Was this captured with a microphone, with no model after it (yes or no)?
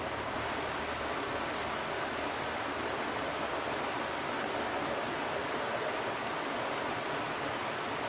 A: yes